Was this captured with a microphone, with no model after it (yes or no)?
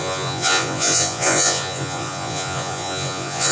no